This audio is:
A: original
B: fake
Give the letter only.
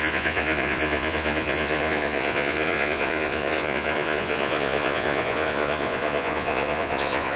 B